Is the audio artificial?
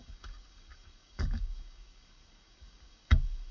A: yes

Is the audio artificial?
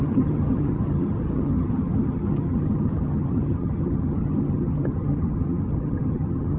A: yes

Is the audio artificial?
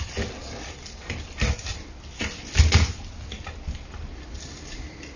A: no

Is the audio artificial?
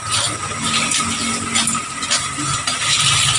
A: no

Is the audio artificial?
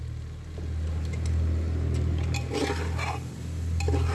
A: no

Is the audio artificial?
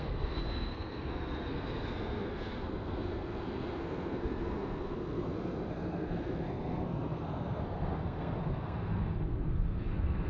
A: yes